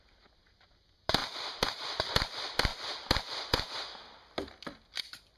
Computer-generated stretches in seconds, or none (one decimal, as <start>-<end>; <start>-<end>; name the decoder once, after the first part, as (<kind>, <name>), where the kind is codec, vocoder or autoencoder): none